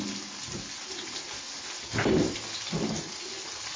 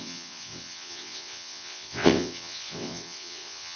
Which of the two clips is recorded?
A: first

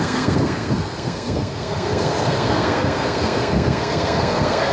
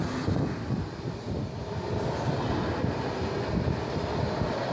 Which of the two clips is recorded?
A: second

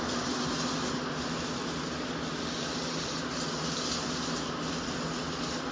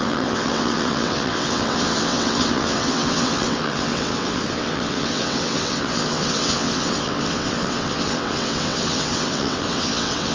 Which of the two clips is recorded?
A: first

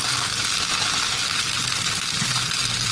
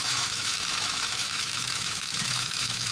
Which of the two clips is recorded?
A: first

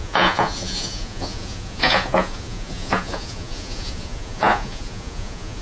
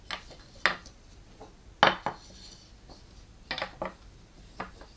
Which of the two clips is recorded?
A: second